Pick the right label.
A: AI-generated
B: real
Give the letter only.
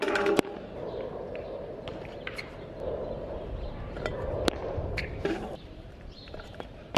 A